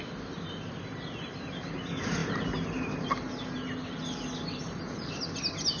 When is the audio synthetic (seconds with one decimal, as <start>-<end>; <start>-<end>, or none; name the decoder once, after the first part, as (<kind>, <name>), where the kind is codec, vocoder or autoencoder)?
2.2-5.1 (vocoder, BigVGAN v2)